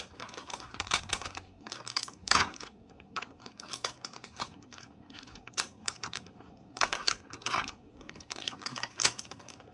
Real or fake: fake